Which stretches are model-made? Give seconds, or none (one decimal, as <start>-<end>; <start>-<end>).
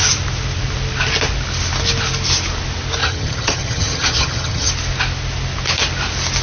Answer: 3.0-4.7